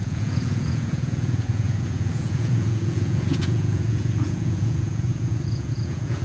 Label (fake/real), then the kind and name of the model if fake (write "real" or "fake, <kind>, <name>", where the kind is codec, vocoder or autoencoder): fake, vocoder, Vocos